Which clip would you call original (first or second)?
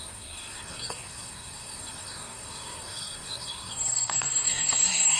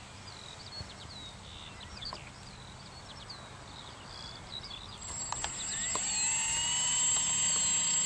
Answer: second